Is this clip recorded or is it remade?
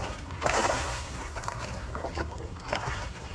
remade